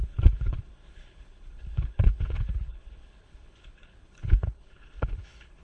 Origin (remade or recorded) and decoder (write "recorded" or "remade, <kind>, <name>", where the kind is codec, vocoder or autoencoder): remade, codec, HILCodec